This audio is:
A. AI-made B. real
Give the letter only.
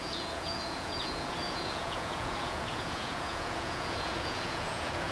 A